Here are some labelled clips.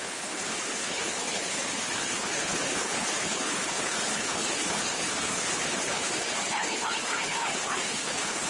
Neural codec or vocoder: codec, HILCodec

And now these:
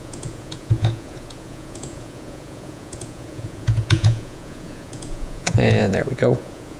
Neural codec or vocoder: vocoder, Vocos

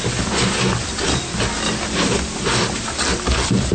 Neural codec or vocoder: none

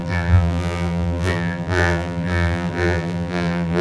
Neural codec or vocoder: vocoder, BigVGAN v2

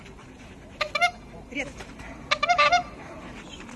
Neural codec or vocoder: none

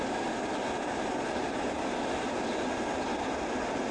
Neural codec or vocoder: none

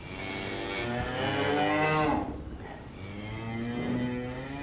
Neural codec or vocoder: none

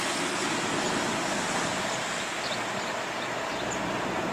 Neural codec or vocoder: none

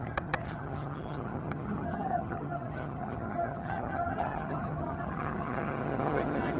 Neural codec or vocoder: vocoder, HiFi-GAN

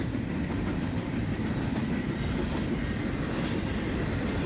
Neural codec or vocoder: vocoder, BigVGAN v2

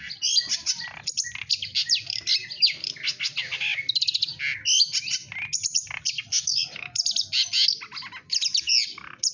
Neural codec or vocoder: none